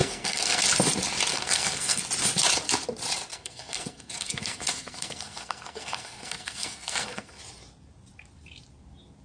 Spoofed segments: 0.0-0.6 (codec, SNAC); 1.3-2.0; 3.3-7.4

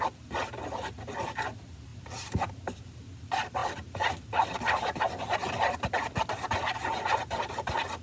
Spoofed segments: 1.9-2.5 (vocoder, BigVGAN v2); 3.6-5.0

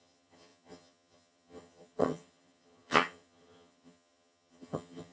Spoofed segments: 0.0-5.1 (vocoder, HiFi-GAN)

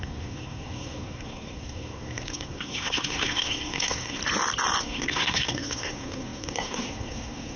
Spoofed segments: 0.0-4.2 (codec, SNAC); 4.8-7.6

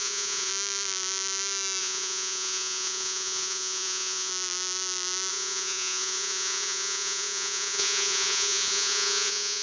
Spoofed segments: 0.0-0.5 (vocoder, Vocos); 1.8-4.3; 5.3-9.6